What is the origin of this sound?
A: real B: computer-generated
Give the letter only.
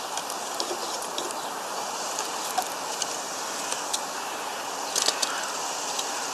A